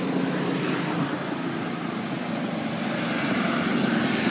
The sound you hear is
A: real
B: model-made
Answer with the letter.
A